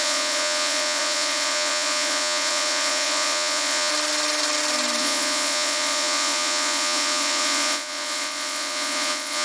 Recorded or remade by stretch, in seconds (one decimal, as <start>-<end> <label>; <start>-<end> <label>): 0.0-3.9 remade; 3.9-5.0 recorded; 5.0-9.4 remade